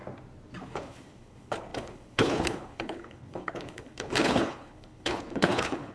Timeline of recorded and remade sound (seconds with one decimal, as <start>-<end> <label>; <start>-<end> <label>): 0.0-0.6 recorded; 0.6-5.9 remade